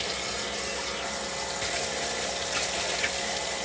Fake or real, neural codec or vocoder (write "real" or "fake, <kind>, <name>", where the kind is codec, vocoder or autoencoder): real